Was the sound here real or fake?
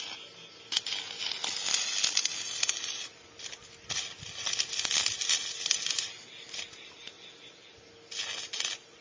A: real